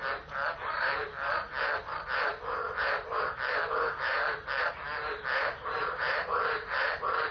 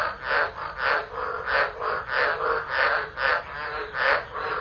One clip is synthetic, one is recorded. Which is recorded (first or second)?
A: second